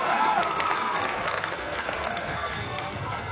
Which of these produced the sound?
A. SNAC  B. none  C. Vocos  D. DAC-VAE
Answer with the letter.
A